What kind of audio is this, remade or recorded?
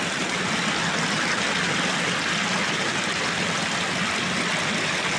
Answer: recorded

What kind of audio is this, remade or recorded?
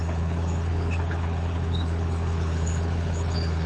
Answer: remade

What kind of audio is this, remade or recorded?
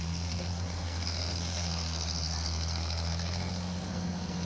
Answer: remade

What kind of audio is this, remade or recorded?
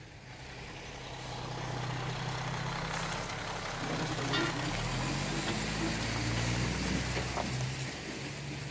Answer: recorded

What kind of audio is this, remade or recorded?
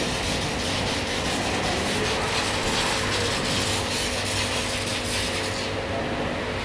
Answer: recorded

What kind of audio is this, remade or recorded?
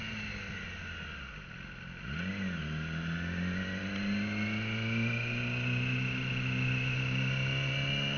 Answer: recorded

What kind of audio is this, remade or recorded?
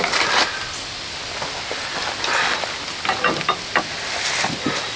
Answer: recorded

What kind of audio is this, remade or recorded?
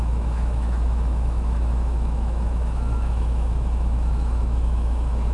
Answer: remade